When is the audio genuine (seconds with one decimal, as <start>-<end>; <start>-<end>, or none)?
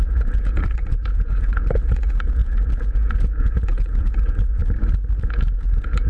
4.6-5.2